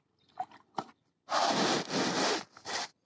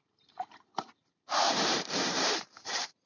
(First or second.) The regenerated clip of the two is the second